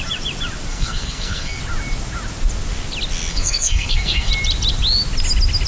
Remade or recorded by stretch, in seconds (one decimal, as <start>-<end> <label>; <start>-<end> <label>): 0.0-0.7 recorded; 0.7-1.6 remade; 1.6-3.3 recorded; 3.3-4.3 remade; 4.3-5.7 recorded